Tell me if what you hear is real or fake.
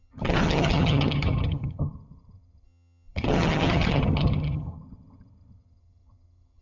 fake